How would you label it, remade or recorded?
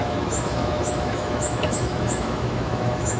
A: remade